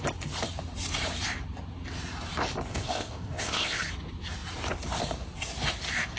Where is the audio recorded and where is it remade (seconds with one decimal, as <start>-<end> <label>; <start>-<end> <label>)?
0.0-2.7 recorded; 2.7-3.8 remade; 3.8-6.2 recorded